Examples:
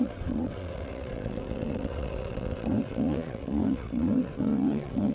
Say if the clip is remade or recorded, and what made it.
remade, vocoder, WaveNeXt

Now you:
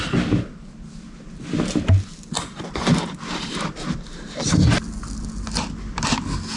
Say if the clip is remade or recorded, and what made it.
recorded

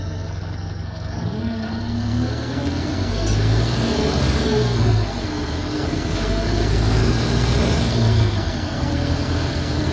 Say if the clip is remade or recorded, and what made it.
remade, codec, SNAC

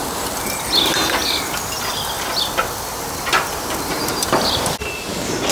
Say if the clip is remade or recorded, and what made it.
recorded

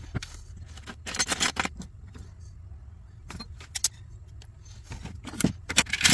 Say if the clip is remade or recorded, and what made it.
recorded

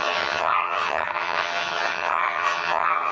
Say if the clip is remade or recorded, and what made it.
remade, vocoder, HiFi-GAN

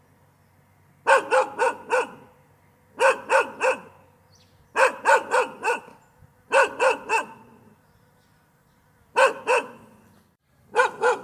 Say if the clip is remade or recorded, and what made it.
recorded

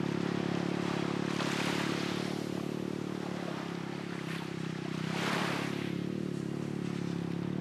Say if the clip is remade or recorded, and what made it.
recorded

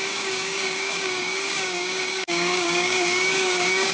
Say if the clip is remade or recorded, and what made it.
remade, codec, DAC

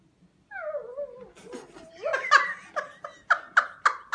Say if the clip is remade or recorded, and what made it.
recorded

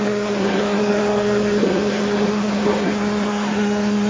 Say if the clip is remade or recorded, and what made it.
remade, codec, SNAC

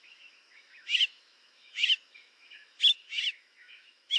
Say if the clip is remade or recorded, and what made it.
remade, autoencoder, DAC-VAE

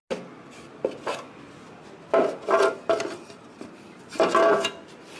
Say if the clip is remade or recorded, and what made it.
recorded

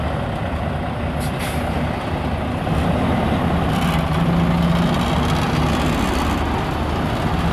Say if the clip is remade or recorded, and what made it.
recorded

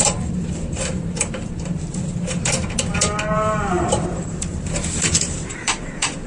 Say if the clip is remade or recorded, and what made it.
remade, vocoder, BigVGAN v2